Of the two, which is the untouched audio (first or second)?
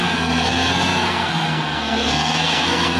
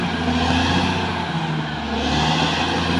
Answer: second